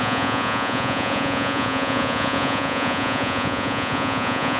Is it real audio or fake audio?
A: fake